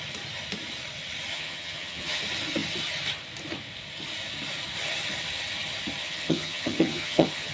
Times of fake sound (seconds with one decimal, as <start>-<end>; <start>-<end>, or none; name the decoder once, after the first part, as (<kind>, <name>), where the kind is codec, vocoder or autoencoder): 1.3-2.2 (vocoder, HiFi-GAN); 6.0-7.5